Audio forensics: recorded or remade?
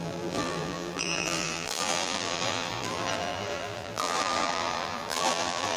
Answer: remade